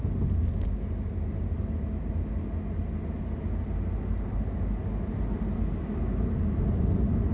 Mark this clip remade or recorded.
recorded